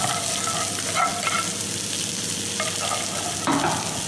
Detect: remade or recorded recorded